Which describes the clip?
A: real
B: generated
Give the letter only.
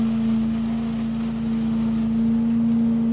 A